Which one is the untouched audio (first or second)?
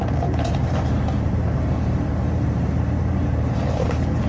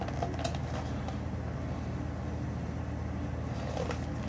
second